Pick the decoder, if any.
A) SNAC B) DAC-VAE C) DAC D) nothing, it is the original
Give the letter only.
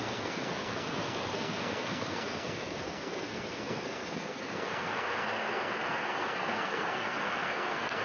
A